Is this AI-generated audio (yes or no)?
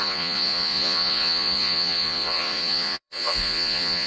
yes